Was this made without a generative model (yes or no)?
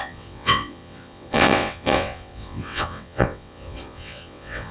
no